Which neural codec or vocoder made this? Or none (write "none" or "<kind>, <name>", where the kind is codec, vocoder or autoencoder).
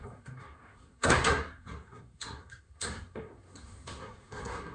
codec, SNAC